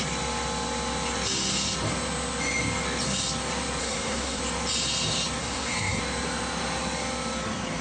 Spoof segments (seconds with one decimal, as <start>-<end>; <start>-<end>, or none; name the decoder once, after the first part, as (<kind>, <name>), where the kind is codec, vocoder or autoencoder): 3.8-4.4 (codec, SNAC); 5.4-6.0